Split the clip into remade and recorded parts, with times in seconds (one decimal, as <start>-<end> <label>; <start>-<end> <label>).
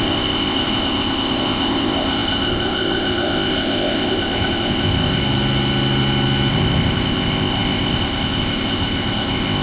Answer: 0.0-5.2 remade; 5.2-6.5 recorded; 6.5-9.6 remade